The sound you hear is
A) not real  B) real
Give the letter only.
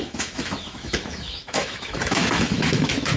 A